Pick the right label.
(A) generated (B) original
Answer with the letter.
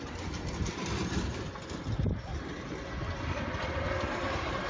B